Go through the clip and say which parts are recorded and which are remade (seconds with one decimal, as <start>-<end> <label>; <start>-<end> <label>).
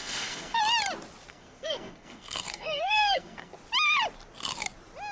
0.0-0.6 remade; 0.6-1.3 recorded; 1.3-3.5 remade; 3.5-5.1 recorded